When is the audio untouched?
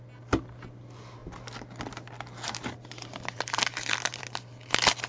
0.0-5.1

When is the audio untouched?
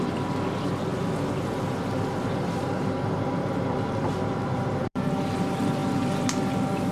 0.0-0.9; 5.0-6.9